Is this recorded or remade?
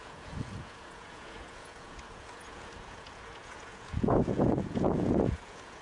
remade